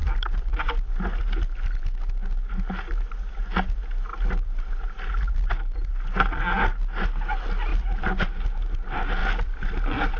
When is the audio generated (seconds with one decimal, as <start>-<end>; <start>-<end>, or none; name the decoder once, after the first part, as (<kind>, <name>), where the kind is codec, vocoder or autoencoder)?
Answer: 0.0-1.1 (vocoder, BigVGAN v2); 4.1-5.9; 7.7-8.2; 9.2-10.2